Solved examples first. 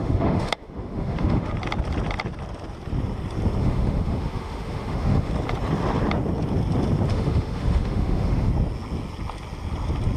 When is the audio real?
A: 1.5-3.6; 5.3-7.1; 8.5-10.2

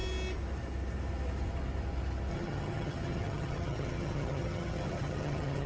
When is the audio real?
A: 0.0-2.3

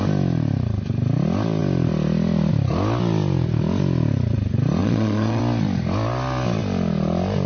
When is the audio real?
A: 0.0-4.8; 5.4-7.5

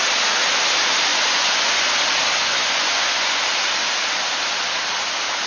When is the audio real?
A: 0.0-1.1; 1.9-2.4; 3.4-5.5

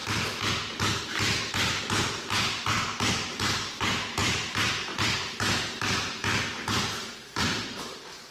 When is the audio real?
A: 0.0-1.0

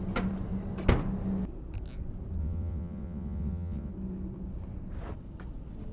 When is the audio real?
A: 0.0-2.4; 3.9-5.9